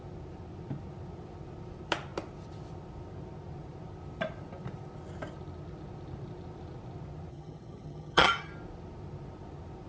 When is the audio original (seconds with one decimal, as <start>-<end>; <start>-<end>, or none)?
0.0-7.3; 8.5-9.9